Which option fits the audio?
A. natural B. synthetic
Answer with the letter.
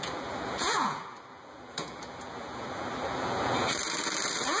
B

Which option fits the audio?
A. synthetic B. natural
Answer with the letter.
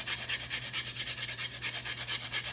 B